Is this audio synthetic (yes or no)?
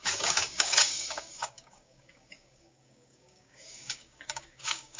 yes